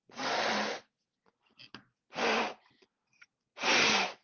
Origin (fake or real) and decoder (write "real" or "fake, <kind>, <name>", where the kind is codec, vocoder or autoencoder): real